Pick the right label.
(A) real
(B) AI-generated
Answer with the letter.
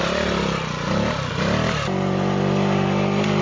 A